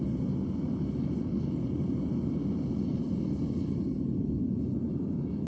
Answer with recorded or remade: recorded